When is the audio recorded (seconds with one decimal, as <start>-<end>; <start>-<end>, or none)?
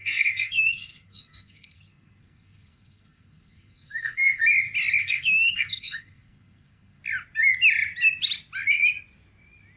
4.4-5.0; 7.0-9.8